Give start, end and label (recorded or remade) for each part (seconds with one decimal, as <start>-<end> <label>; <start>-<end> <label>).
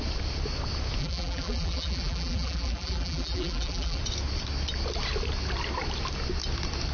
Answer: 0.0-1.0 recorded; 1.0-4.0 remade; 4.0-6.9 recorded